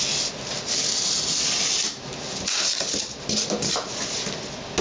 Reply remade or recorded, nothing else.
recorded